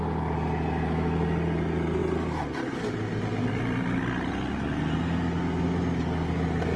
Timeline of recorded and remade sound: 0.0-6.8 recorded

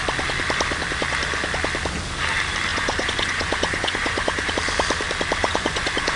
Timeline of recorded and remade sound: 0.0-2.7 recorded; 2.7-4.5 remade; 4.5-5.4 recorded; 5.4-6.2 remade

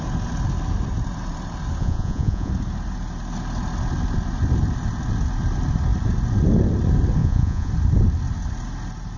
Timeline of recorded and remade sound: 0.0-1.8 recorded; 1.8-2.5 remade; 2.5-7.2 recorded; 7.2-7.7 remade; 7.7-9.2 recorded

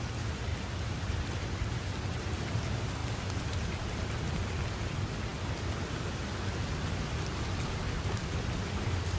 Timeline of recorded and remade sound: 0.0-9.2 recorded

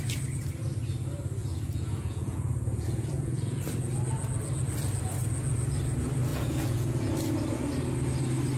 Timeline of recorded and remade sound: 0.0-1.4 recorded; 1.4-3.6 remade; 3.6-6.3 recorded; 6.3-7.1 remade; 7.1-8.6 recorded

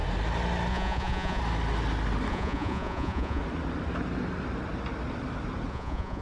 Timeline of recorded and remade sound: 0.0-0.7 recorded; 0.7-1.4 remade; 1.4-2.3 recorded; 2.3-3.4 remade; 3.4-5.7 recorded; 5.7-6.2 remade

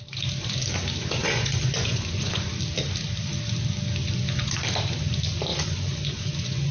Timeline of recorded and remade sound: 0.0-1.2 recorded; 1.2-2.5 remade; 2.5-5.5 recorded; 5.5-6.7 remade

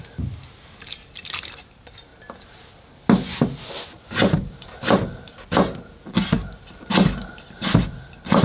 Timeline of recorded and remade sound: 0.0-8.4 recorded